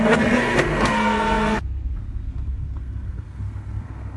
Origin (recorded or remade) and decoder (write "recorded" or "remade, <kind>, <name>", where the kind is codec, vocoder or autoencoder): remade, codec, SNAC